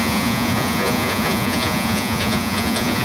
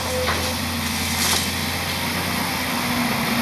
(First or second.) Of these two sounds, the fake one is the first